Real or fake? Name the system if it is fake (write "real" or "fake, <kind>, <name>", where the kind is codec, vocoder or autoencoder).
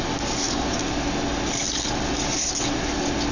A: real